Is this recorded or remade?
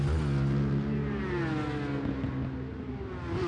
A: recorded